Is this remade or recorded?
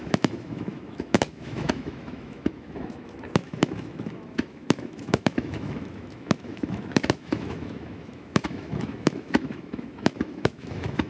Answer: remade